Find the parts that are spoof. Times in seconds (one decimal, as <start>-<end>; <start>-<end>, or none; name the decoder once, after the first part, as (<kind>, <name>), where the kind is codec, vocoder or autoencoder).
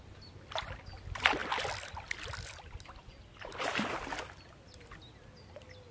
none